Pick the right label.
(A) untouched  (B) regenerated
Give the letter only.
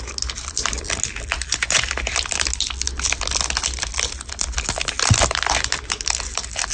A